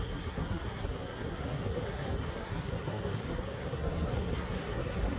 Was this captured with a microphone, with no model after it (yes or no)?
no